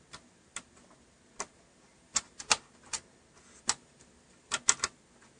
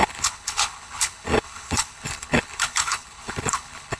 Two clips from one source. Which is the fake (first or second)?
second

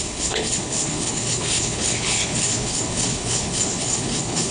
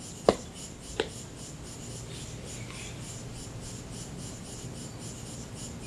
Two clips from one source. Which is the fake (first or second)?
first